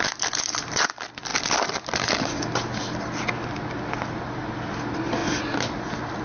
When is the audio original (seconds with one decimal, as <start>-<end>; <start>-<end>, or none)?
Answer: 0.0-6.2

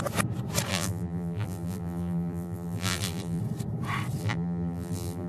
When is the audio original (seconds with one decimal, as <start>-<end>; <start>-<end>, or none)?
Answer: 0.0-0.7; 3.4-4.2

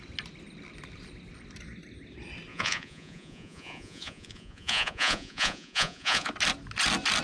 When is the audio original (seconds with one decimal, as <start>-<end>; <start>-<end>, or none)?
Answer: 0.0-2.5; 6.3-7.2

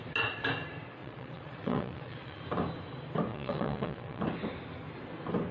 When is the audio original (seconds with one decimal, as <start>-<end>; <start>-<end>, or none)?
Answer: 0.0-1.0; 2.4-3.3; 4.2-5.5

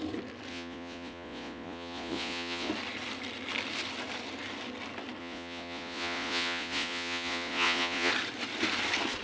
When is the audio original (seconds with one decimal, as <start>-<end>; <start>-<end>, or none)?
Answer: 0.0-0.5; 2.7-5.2; 8.1-9.2

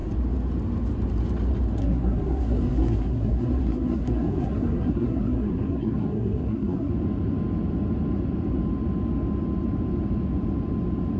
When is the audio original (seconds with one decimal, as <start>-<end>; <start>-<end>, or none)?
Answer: 0.0-1.8; 6.9-11.2

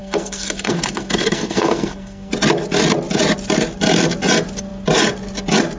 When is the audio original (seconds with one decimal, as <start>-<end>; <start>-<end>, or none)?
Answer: 2.3-5.8

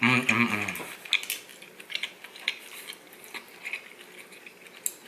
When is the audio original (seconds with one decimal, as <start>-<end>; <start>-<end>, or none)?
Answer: 0.0-1.5; 2.1-5.1